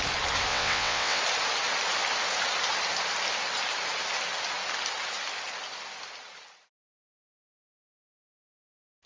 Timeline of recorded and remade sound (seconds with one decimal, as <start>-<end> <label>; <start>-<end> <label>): 0.0-0.5 recorded; 0.5-1.2 remade; 1.2-9.1 recorded